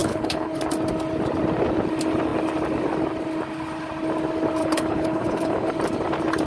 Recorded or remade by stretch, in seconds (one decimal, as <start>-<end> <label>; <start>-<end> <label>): 0.0-0.6 remade; 0.6-4.6 recorded; 4.6-5.7 remade; 5.7-6.5 recorded